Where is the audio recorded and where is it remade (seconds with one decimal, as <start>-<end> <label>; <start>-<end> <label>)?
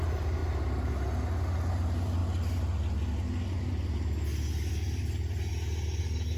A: 0.0-0.4 remade; 0.4-1.7 recorded; 1.7-2.2 remade; 2.2-6.0 recorded; 6.0-6.4 remade